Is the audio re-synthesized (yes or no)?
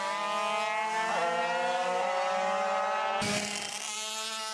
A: no